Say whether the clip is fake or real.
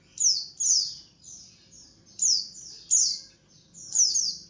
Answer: real